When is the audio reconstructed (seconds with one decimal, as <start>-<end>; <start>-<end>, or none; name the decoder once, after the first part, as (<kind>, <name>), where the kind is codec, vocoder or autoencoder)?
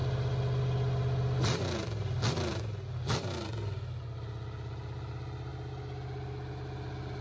none